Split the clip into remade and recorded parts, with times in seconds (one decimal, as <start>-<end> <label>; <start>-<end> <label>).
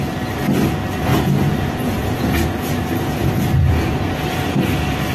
0.0-1.1 recorded; 1.1-4.2 remade; 4.2-5.1 recorded